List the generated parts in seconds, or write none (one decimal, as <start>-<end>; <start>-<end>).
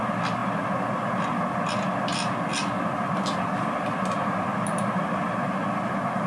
none